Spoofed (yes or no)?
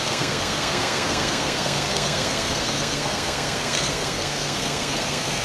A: yes